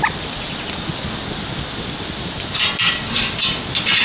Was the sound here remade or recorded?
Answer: recorded